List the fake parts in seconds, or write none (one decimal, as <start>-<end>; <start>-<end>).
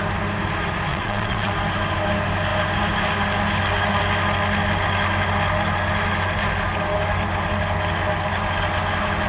0.9-1.5